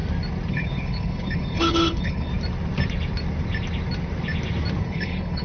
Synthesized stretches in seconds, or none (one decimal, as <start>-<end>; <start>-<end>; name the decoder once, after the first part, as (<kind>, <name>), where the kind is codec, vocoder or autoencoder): 0.5-2.3 (codec, HILCodec); 4.8-5.4